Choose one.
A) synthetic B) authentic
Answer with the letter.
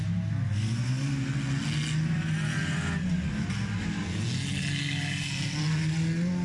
B